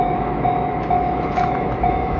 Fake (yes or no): yes